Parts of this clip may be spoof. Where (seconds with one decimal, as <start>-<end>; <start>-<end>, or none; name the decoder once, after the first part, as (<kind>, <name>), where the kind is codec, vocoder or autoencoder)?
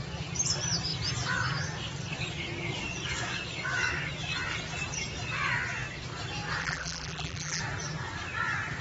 6.6-7.6 (vocoder, BigVGAN v2)